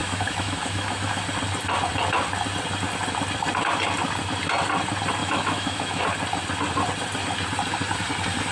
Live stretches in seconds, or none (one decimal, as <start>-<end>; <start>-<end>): 1.2-5.2; 6.0-8.5